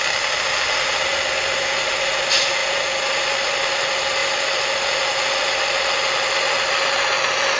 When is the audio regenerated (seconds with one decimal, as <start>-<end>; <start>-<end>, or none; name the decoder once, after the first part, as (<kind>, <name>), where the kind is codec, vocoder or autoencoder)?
none